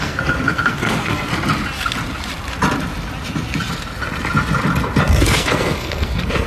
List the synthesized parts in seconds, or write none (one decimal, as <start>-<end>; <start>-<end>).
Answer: 0.0-1.3; 5.0-6.5

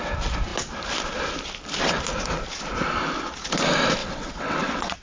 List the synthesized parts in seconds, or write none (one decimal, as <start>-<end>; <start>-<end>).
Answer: 4.0-5.0